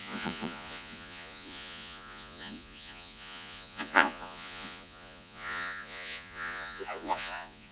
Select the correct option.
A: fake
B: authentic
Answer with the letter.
A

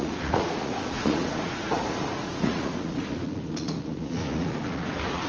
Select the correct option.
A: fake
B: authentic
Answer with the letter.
A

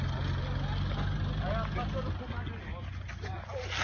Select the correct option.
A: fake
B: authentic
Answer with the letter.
B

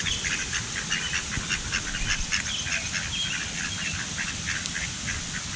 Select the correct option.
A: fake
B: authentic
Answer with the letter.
B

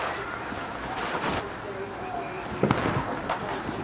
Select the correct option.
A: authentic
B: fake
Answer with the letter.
A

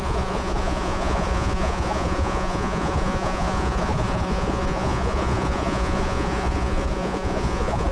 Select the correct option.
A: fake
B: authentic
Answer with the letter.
A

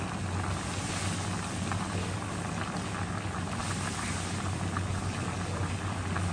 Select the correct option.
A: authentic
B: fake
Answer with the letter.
A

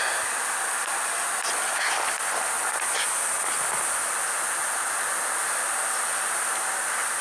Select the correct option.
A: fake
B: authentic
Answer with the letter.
B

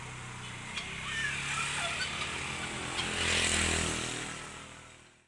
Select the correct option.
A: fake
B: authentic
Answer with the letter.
B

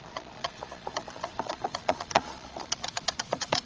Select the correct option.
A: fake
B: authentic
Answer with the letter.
A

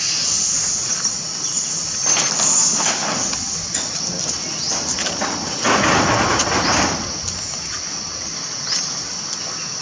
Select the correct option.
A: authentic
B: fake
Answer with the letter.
A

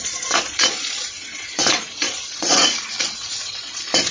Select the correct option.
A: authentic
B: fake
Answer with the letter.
B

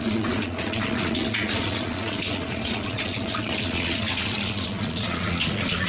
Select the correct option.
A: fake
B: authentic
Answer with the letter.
A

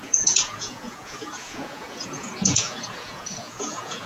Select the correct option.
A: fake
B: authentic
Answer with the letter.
A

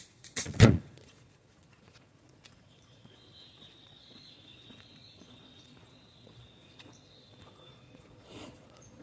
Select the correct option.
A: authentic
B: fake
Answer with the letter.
B